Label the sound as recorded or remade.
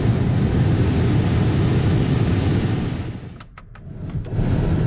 recorded